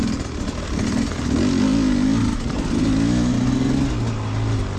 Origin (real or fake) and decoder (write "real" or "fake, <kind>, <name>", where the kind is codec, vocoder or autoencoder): real